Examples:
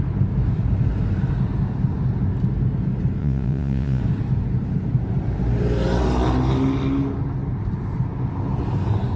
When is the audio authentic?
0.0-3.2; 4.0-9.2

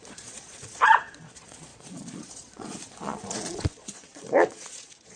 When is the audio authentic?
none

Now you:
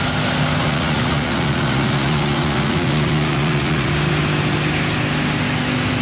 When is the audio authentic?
0.0-0.6; 3.9-6.0